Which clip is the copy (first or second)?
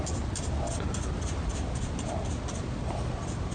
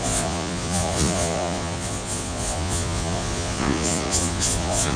second